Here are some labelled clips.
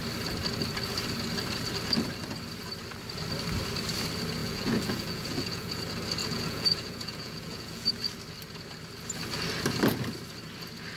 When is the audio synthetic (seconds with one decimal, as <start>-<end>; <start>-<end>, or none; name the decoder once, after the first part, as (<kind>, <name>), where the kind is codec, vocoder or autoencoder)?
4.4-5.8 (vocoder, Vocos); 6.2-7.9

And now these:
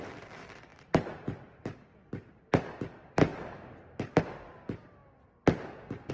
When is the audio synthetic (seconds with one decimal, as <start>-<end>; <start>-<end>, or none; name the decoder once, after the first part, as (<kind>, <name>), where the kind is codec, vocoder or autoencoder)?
none

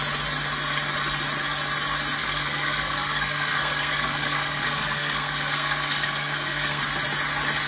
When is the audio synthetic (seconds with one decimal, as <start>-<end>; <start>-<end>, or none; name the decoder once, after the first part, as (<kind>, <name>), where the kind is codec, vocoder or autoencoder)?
2.2-6.8 (codec, SNAC)

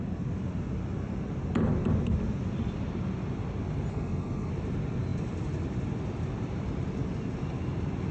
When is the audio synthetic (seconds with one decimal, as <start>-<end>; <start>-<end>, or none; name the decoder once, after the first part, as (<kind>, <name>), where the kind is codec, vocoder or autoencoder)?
3.9-4.5 (codec, SNAC)

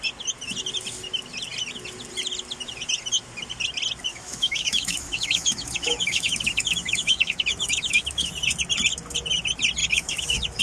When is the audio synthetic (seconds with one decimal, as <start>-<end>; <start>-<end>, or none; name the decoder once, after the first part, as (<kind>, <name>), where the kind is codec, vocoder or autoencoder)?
4.1-8.3 (autoencoder, DAC-VAE); 9.8-10.6

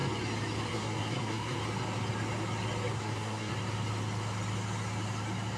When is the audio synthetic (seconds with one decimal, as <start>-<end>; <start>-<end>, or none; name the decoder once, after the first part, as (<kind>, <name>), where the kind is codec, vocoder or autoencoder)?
0.7-1.6 (codec, SNAC); 2.9-3.5